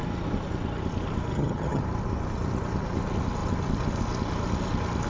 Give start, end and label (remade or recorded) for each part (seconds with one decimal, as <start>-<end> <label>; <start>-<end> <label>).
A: 0.0-1.3 recorded; 1.3-1.8 remade; 1.8-5.1 recorded